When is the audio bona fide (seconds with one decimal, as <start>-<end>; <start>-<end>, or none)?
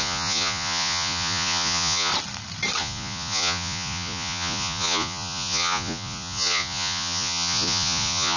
2.1-2.8